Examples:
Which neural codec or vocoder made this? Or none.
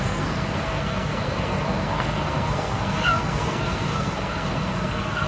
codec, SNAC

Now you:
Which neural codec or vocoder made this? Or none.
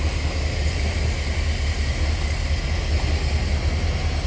none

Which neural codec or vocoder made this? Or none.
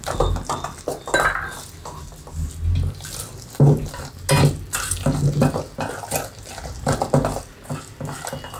none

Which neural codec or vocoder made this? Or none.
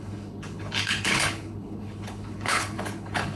codec, HILCodec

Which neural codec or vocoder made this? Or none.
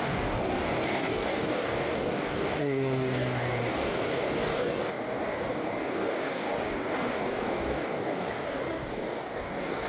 codec, DAC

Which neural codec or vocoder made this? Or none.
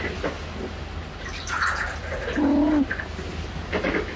none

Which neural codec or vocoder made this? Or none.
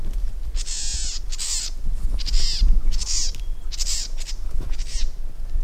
none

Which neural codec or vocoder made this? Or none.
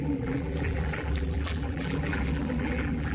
vocoder, BigVGAN v2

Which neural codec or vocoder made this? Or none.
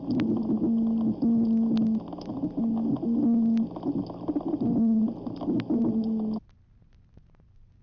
none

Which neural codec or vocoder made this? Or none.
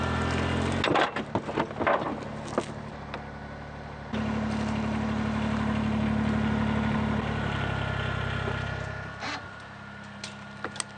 none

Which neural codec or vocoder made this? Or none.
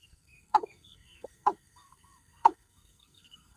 codec, SNAC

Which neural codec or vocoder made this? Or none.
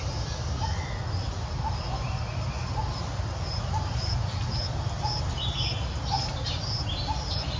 none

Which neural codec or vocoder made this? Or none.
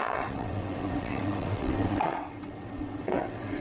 vocoder, WaveNeXt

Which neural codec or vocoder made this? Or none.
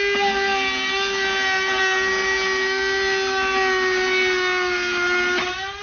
none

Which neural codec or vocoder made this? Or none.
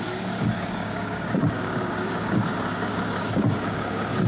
codec, DAC